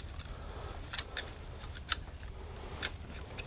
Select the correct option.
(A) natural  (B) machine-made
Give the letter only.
B